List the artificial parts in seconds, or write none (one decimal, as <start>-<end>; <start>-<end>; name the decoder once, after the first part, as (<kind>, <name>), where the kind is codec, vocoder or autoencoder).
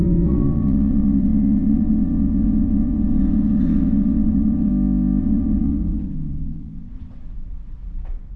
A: 0.0-4.7 (vocoder, WaveNeXt); 5.2-8.4